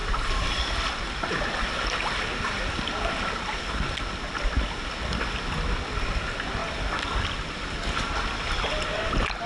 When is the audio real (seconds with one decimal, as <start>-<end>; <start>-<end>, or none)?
0.0-9.5